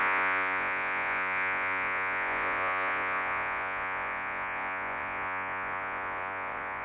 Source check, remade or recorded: remade